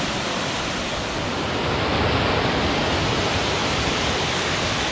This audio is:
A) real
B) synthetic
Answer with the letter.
A